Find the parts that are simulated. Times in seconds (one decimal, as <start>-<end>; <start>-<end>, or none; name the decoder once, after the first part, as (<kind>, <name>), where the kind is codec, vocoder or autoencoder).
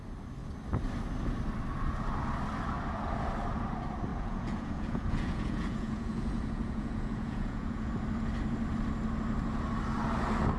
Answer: 4.1-7.9 (vocoder, Vocos)